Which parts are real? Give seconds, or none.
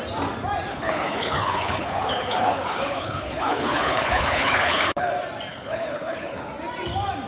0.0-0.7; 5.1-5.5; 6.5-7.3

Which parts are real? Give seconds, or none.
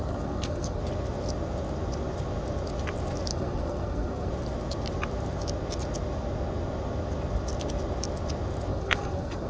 0.8-3.3; 4.3-8.7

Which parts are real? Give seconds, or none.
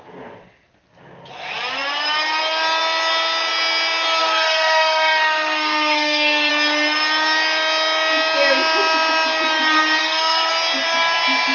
0.0-4.2; 6.5-10.0; 10.5-11.5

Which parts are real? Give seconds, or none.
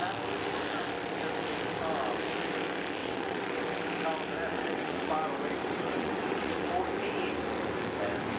0.0-3.0; 3.6-4.5; 5.1-5.6; 6.7-8.4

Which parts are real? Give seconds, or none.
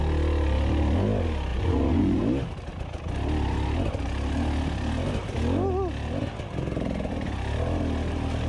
0.0-1.5; 2.2-8.5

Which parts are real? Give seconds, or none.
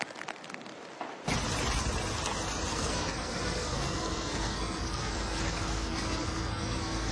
0.0-2.7